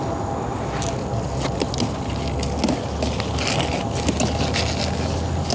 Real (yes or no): yes